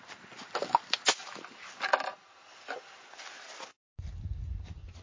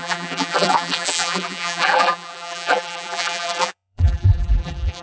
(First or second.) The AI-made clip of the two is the second